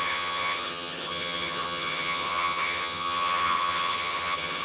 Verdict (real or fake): fake